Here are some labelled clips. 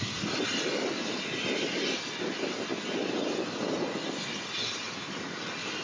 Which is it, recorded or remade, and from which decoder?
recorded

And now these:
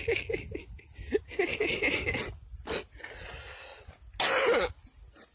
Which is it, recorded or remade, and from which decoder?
recorded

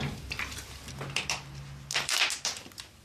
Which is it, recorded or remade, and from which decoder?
recorded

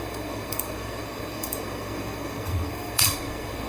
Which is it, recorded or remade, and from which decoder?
remade, codec, SNAC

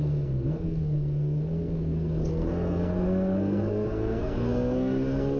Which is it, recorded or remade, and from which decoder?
remade, codec, SNAC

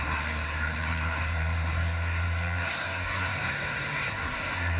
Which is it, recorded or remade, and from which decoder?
remade, codec, SNAC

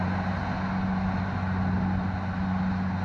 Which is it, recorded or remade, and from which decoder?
recorded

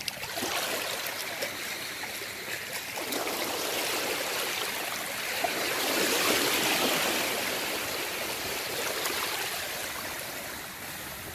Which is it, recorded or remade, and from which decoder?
recorded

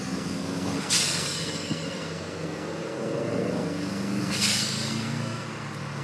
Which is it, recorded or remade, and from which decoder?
remade, codec, SNAC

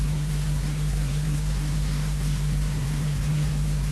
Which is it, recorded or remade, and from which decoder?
remade, codec, SNAC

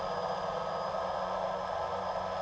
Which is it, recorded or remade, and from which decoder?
recorded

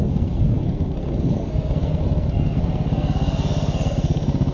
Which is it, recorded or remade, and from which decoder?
remade, codec, SNAC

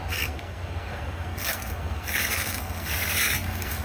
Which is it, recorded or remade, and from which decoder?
remade, codec, SNAC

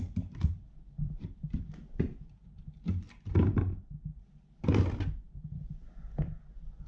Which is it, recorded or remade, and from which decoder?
recorded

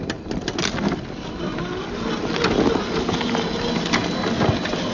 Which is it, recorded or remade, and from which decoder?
recorded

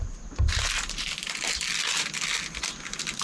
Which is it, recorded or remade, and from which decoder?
recorded